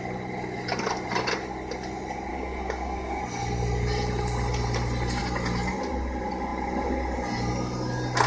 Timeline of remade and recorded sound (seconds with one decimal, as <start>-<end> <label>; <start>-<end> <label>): 0.0-2.3 recorded; 2.3-3.2 remade; 3.2-8.3 recorded